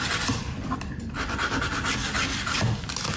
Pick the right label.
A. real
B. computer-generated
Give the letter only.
A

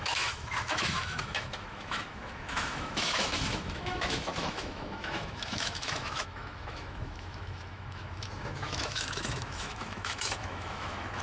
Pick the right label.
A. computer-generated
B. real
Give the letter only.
A